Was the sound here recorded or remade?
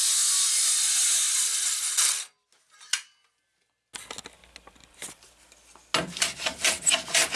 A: recorded